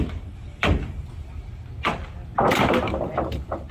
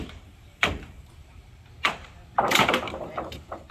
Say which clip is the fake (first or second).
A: second